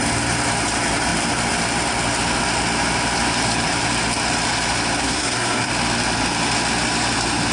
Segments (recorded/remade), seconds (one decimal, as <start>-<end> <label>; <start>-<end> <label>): 0.0-5.0 recorded; 5.0-5.7 remade; 5.7-7.5 recorded